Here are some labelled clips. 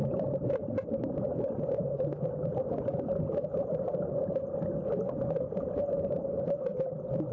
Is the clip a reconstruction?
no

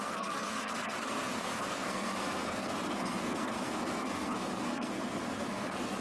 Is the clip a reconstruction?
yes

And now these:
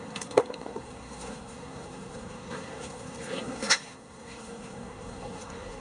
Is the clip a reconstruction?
yes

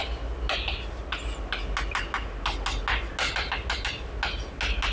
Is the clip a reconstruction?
no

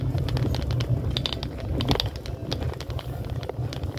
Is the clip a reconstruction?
no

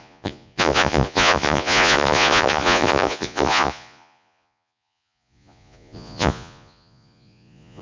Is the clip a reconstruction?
yes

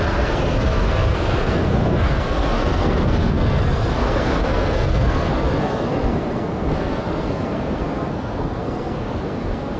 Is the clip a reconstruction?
yes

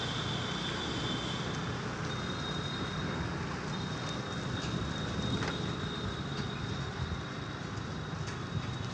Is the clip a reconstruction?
no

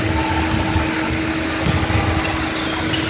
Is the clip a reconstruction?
no